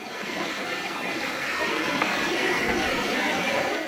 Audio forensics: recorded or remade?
remade